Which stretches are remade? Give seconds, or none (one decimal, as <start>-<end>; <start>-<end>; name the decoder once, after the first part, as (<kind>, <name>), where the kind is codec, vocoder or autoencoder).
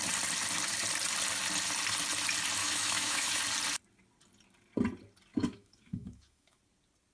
2.6-3.4 (autoencoder, DAC-VAE); 5.3-6.6